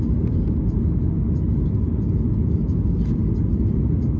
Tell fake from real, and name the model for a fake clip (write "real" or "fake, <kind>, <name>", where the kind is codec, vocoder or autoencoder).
real